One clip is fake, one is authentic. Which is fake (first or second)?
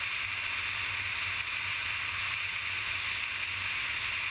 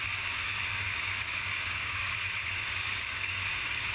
second